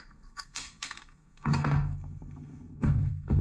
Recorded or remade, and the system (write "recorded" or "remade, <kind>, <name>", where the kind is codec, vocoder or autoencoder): remade, codec, SNAC